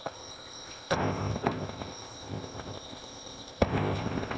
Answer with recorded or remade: remade